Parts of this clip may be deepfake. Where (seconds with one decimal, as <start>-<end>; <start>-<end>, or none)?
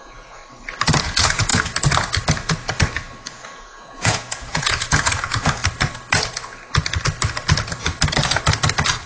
0.0-0.4; 1.0-1.5; 3.3-5.6